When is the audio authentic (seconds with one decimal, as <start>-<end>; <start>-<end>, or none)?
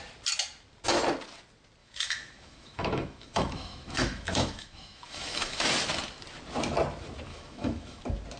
0.0-1.8; 5.7-7.3; 8.0-8.4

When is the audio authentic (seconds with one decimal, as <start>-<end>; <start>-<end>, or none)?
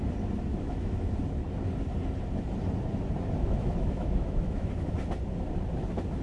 0.0-0.5; 1.1-3.4; 4.9-6.2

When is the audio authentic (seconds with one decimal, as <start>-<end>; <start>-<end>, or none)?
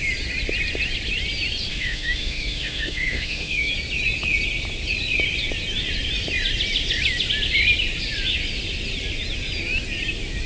0.0-1.7; 3.7-10.5